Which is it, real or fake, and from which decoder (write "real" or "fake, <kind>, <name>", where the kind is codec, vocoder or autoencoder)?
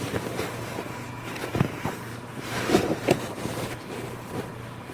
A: fake, vocoder, BigVGAN v2